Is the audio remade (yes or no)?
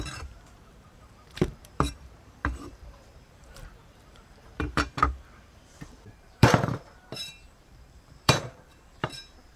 yes